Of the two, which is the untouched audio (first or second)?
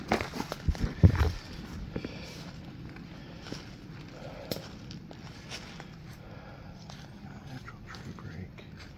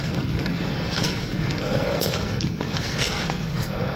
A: first